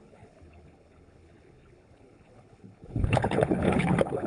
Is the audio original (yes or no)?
no